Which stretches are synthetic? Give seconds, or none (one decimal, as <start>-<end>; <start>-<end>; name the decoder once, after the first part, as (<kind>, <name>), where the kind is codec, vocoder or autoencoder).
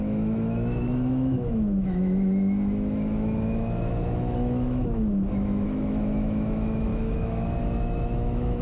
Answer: 0.0-8.6 (autoencoder, DAC-VAE)